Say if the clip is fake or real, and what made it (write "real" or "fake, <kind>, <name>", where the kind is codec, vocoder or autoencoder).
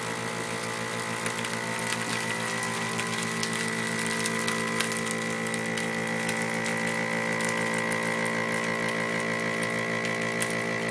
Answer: real